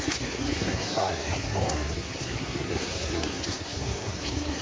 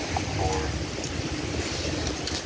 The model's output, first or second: first